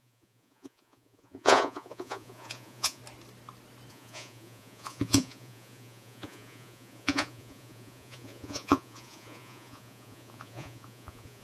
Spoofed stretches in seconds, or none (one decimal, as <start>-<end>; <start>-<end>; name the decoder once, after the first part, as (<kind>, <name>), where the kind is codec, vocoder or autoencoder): 0.0-3.0 (vocoder, Vocos); 3.9-11.4